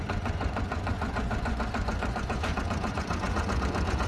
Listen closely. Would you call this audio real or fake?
fake